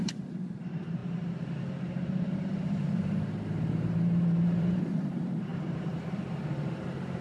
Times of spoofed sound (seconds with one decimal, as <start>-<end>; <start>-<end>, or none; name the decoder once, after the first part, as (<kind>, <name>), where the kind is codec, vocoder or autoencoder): 0.0-7.2 (vocoder, BigVGAN v2)